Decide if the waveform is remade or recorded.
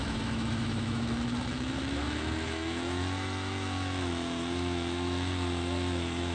remade